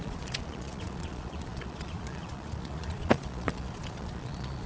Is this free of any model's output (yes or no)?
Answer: no